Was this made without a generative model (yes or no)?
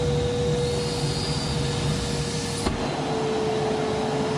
yes